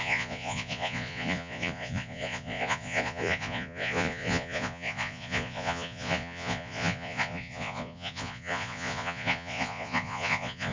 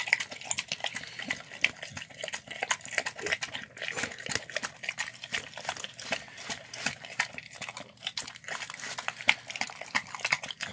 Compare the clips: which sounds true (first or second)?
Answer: second